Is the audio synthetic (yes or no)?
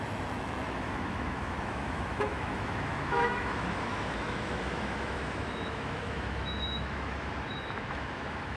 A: yes